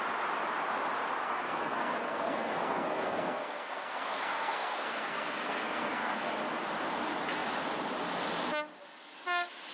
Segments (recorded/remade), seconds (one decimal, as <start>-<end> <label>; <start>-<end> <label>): 0.0-1.2 recorded; 1.2-6.3 remade; 6.3-9.7 recorded